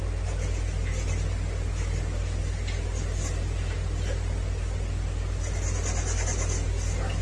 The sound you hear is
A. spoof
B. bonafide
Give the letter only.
B